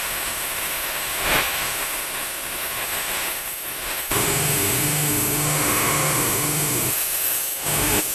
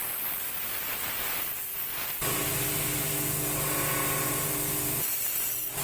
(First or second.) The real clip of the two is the second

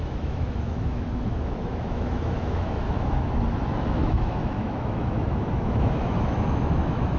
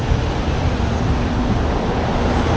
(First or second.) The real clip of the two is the second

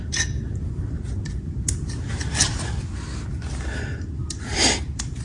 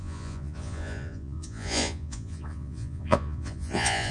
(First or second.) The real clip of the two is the first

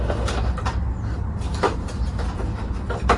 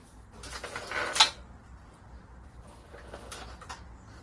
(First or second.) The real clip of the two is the second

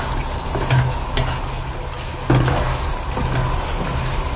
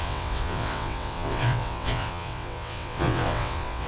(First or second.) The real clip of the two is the first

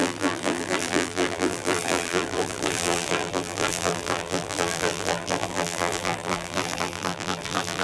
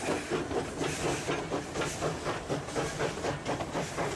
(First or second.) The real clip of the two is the second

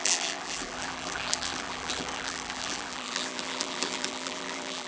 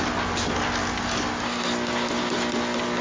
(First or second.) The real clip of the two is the second